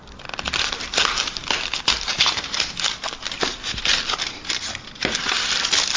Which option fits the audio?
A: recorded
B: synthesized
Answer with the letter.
A